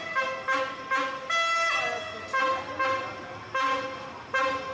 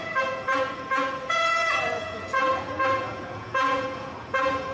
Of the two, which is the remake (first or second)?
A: second